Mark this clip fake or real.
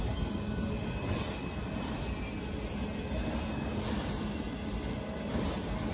real